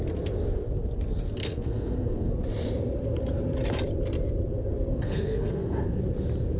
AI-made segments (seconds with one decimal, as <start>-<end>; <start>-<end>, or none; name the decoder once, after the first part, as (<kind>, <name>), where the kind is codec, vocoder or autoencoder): 1.4-2.3 (codec, SNAC); 4.9-6.0